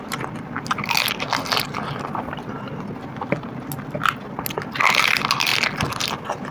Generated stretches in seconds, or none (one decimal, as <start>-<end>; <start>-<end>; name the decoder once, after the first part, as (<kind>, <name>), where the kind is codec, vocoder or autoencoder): none